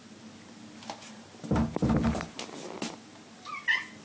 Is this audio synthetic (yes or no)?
no